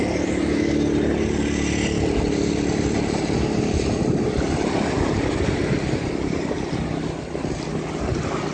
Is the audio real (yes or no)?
yes